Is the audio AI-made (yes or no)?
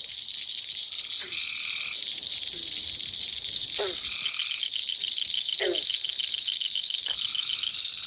no